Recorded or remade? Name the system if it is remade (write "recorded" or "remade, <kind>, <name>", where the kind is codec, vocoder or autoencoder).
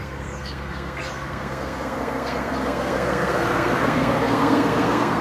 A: remade, codec, SNAC